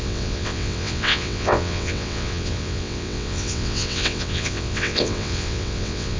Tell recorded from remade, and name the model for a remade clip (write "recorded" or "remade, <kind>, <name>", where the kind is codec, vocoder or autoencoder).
remade, vocoder, WaveNeXt